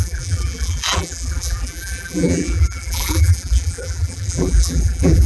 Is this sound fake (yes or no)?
yes